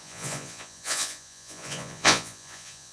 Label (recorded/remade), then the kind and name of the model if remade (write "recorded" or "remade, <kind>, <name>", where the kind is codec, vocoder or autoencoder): remade, vocoder, Vocos